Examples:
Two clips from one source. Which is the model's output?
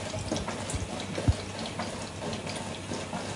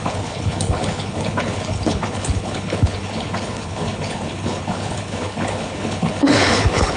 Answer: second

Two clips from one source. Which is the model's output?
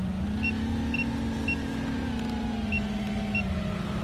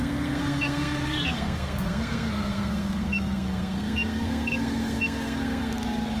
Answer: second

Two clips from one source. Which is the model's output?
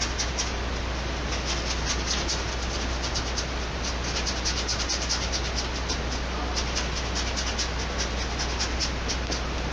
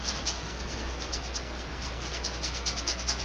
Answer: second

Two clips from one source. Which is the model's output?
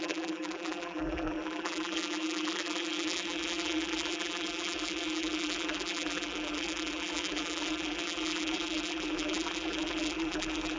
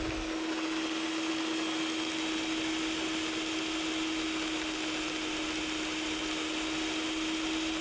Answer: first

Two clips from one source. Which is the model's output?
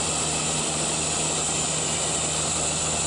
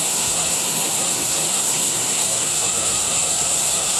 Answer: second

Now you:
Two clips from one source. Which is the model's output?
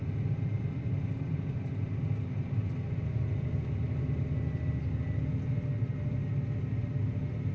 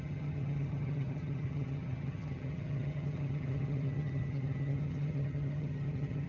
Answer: second